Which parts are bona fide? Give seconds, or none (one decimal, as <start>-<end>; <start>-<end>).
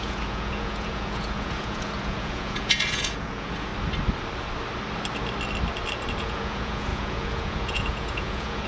3.7-6.2